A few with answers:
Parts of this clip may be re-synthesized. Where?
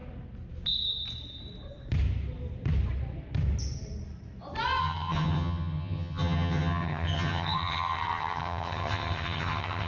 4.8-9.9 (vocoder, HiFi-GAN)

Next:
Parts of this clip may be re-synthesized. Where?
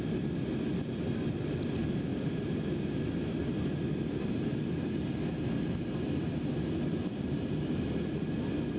none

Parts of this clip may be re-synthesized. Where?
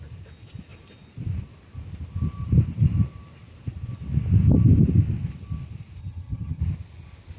6.0-6.6 (vocoder, HiFi-GAN)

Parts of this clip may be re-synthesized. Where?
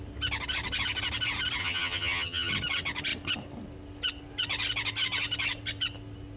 1.6-2.5 (vocoder, HiFi-GAN)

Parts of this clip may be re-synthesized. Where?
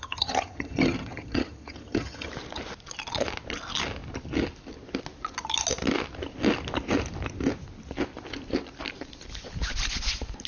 0.0-2.3 (vocoder, HiFi-GAN)